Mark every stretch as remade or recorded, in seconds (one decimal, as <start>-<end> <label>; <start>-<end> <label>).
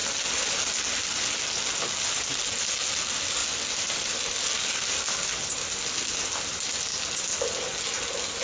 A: 0.0-8.4 recorded